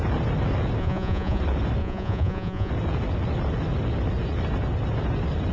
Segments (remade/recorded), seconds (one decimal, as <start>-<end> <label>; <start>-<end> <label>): 0.0-0.8 recorded; 0.8-1.4 remade; 1.4-1.8 recorded; 1.8-2.7 remade; 2.7-5.5 recorded